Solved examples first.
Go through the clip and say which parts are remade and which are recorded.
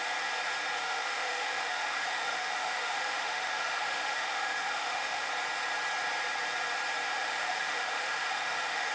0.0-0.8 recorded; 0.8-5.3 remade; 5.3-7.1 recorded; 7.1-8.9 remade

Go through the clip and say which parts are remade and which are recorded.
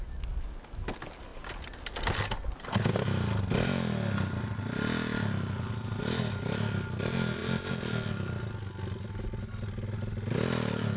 0.0-11.0 recorded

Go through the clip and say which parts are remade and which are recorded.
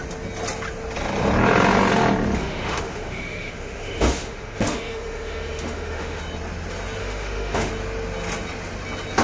0.0-2.4 recorded; 2.4-6.2 remade; 6.2-7.0 recorded; 7.0-7.7 remade; 7.7-9.2 recorded